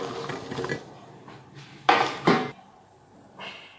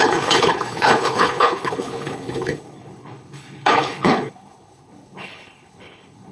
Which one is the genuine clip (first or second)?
first